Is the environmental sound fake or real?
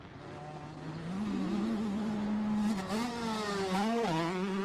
real